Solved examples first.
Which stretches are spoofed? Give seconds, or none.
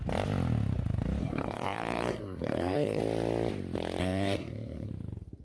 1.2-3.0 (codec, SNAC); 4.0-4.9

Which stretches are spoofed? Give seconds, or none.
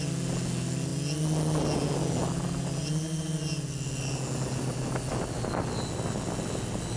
none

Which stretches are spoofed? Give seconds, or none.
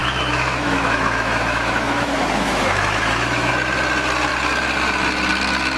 0.0-3.5 (autoencoder, DAC-VAE)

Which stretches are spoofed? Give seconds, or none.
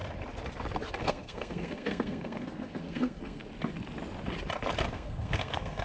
1.0-3.4 (codec, SNAC); 4.9-5.8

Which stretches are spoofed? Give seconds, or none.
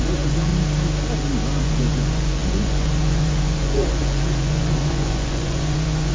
0.0-0.5 (vocoder, Vocos); 1.6-6.1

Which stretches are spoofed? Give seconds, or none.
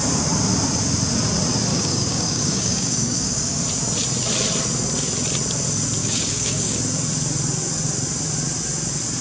1.7-3.6 (codec, DAC); 6.0-6.8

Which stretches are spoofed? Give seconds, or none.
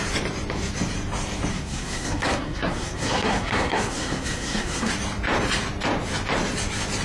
1.5-4.9 (codec, SNAC)